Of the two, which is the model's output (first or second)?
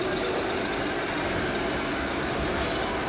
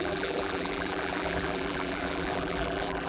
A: second